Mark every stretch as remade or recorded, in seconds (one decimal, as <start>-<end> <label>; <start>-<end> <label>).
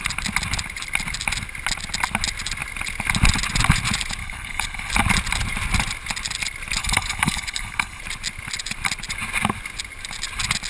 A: 0.0-4.2 recorded; 4.2-4.9 remade; 4.9-6.8 recorded; 6.8-8.0 remade; 8.0-10.7 recorded